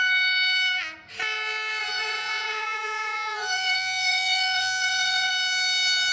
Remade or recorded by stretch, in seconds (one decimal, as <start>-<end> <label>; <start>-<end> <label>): 0.0-1.8 recorded; 1.8-5.3 remade; 5.3-6.1 recorded